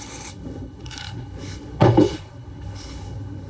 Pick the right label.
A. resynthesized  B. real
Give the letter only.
A